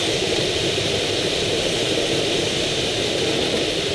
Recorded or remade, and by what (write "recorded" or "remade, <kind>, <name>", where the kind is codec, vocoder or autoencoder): recorded